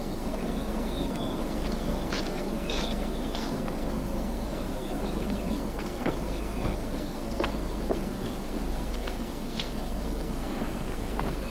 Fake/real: fake